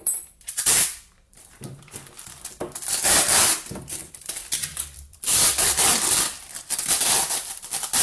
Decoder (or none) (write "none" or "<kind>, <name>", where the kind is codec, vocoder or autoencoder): vocoder, BigVGAN v2